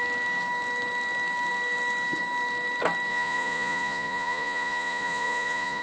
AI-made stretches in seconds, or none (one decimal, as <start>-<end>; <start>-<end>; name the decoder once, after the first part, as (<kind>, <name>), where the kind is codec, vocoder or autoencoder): 3.1-5.8 (vocoder, Vocos)